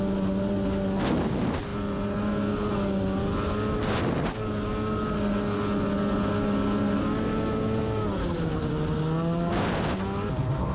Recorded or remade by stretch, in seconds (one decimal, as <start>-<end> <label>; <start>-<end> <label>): 0.0-10.7 recorded

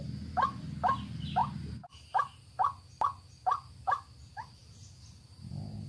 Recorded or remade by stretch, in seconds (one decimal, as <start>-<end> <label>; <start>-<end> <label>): 0.0-5.9 recorded